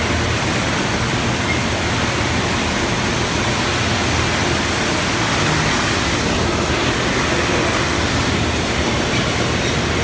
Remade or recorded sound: recorded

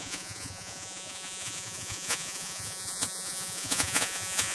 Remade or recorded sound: remade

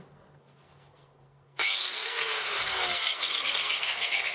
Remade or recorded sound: remade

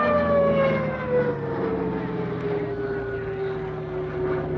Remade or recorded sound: recorded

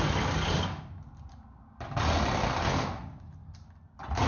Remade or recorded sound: recorded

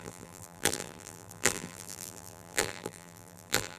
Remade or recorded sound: remade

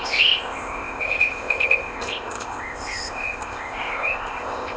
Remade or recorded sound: remade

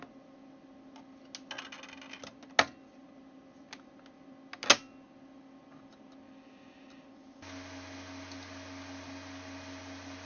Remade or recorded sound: recorded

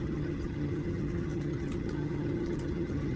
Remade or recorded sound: remade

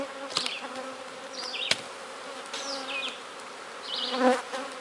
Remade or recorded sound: recorded